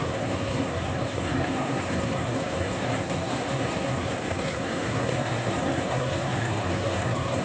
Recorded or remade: remade